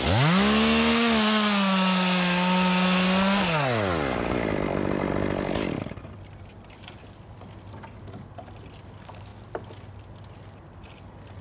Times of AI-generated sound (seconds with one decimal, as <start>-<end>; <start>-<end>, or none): none